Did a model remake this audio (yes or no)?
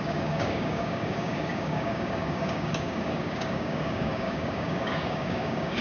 yes